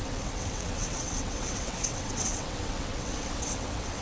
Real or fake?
fake